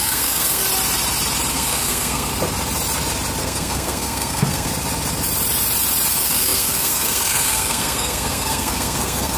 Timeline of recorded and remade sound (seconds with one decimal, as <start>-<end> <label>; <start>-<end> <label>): 0.0-0.6 remade; 0.6-1.5 recorded; 1.5-2.3 remade; 2.3-3.4 recorded; 3.4-4.7 remade; 4.7-6.1 recorded; 6.1-9.4 remade